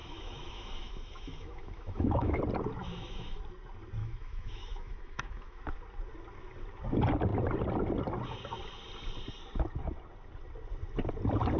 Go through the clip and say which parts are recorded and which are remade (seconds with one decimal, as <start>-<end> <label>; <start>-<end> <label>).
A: 0.0-2.4 remade; 2.4-2.8 recorded; 2.8-3.4 remade; 3.4-4.0 recorded; 4.0-5.6 remade; 5.6-11.6 recorded